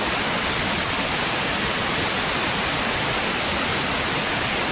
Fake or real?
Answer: real